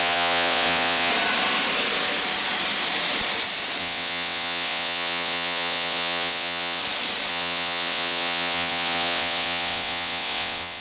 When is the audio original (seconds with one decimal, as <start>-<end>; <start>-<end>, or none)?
1.1-3.8; 6.8-7.3